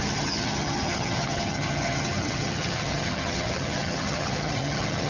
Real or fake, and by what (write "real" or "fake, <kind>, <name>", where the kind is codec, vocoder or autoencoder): fake, vocoder, HiFi-GAN